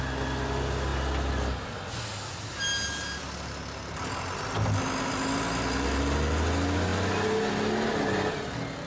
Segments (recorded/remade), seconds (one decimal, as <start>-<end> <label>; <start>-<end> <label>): 0.0-8.9 recorded